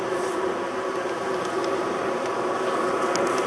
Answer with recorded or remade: recorded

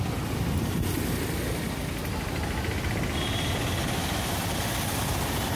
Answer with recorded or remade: recorded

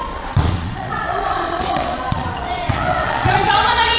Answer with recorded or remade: remade